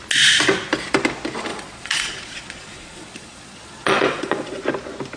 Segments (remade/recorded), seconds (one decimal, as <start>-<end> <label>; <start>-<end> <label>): 0.0-1.5 recorded; 1.5-4.6 remade; 4.6-5.2 recorded